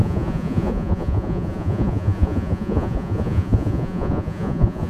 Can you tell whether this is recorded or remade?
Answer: remade